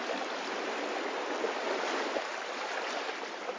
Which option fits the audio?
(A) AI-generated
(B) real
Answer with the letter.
B